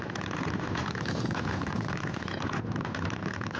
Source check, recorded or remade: recorded